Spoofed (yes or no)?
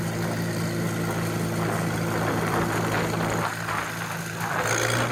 no